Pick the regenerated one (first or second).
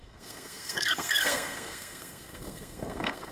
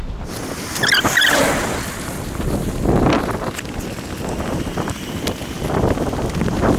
first